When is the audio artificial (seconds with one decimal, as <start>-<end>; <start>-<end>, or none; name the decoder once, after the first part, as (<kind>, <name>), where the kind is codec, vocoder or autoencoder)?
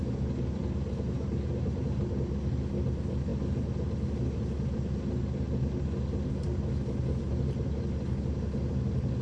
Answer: none